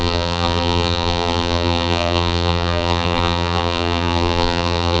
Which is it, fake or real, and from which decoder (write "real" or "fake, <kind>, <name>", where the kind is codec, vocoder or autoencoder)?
fake, vocoder, BigVGAN v2